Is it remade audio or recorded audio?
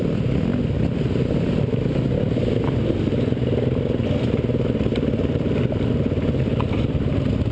recorded